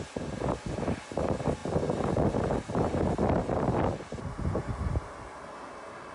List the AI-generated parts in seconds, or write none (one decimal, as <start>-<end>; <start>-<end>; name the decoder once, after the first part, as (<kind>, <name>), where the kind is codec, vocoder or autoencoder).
none